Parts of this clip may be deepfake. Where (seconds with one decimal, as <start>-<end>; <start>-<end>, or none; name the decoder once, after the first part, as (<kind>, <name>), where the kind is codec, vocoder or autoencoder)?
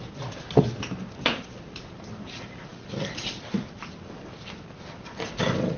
none